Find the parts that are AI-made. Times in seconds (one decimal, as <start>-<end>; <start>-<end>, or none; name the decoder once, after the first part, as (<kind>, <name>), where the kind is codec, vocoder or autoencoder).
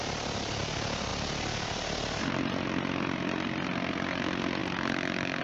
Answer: none